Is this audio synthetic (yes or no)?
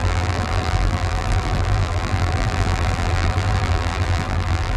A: yes